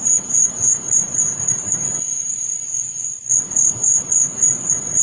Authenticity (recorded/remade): remade